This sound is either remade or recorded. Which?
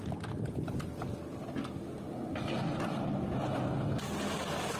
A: recorded